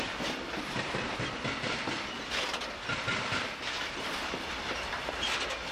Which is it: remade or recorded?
recorded